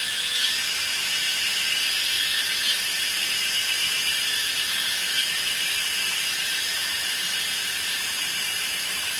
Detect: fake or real fake